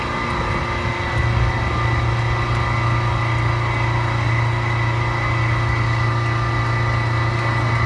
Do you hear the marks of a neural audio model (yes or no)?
no